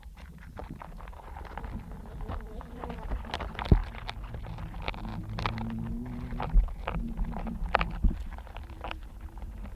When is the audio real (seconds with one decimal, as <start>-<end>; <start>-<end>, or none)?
0.0-9.8